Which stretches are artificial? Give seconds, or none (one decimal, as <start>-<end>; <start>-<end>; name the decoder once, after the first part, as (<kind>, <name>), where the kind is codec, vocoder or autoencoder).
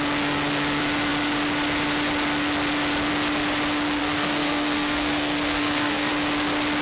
4.0-6.1 (codec, SNAC)